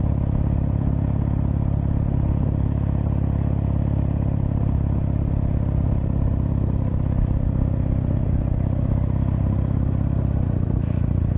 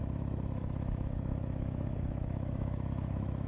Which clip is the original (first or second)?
first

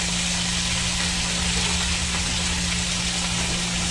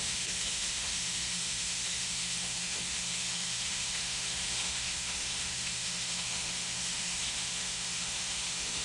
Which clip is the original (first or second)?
first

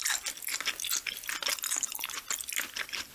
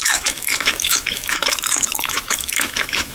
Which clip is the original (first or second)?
first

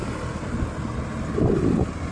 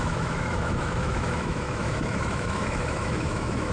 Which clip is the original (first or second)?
first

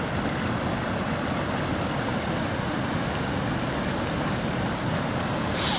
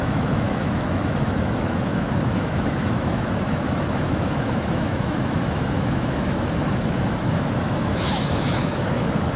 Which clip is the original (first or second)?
first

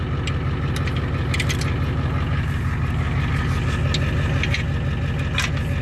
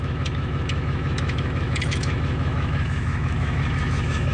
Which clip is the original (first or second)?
first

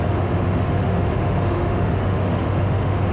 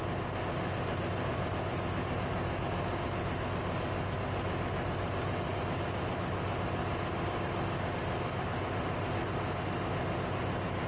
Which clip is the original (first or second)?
second